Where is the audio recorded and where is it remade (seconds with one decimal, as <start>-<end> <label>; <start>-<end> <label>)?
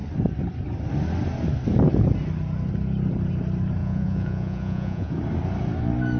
0.0-3.8 recorded; 3.8-5.1 remade; 5.1-6.2 recorded